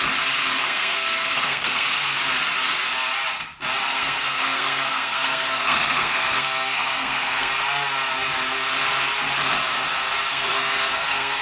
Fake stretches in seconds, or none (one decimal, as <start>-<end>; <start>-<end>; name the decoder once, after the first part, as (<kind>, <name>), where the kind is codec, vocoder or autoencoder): 0.6-2.2 (codec, SNAC); 3.8-7.5; 10.3-11.4